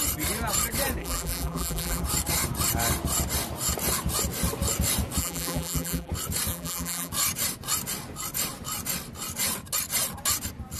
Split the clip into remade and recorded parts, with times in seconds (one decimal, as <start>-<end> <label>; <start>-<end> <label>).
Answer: 0.0-1.0 recorded; 1.0-2.0 remade; 2.0-5.2 recorded; 5.2-6.1 remade; 6.1-6.5 recorded; 6.5-7.1 remade; 7.1-10.8 recorded